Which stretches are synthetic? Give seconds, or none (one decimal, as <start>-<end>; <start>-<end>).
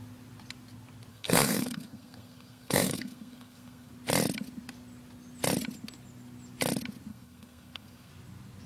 1.1-3.9; 7.1-8.1